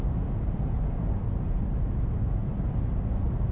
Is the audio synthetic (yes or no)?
yes